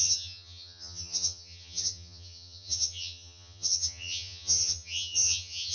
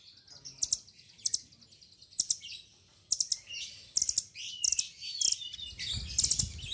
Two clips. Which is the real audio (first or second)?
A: second